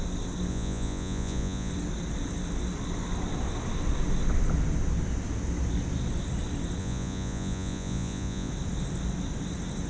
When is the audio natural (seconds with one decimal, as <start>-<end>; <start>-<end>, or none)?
0.0-0.5; 1.7-6.8; 8.5-9.9